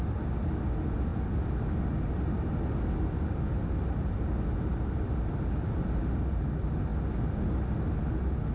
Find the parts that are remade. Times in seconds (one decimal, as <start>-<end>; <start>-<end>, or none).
none